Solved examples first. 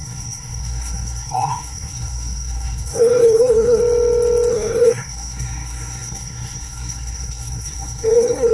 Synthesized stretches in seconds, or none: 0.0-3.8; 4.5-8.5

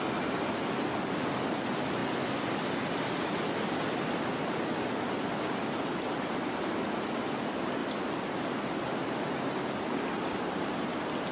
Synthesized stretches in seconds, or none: none

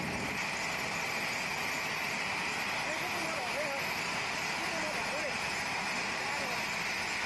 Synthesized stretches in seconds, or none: none

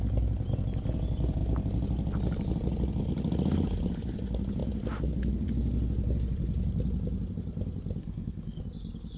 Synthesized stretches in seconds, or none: 8.0-8.6